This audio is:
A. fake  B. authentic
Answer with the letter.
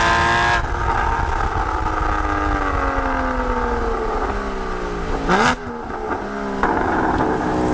B